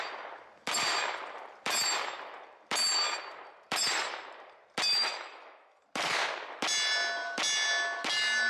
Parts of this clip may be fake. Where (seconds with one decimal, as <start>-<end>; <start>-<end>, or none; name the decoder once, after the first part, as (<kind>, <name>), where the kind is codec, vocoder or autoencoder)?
5.0-5.8 (autoencoder, DAC-VAE)